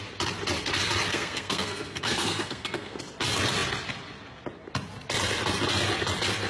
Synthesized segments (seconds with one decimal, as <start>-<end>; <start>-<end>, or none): 1.1-3.0